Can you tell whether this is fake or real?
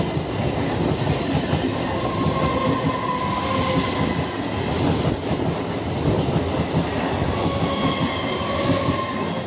real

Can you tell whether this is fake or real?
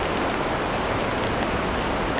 real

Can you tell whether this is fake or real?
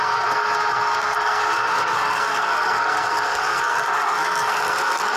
fake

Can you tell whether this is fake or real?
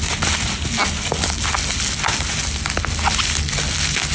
real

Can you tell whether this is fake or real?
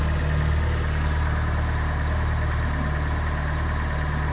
real